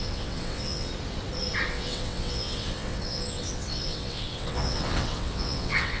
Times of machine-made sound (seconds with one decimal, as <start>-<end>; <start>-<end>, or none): 0.0-0.9; 1.7-6.0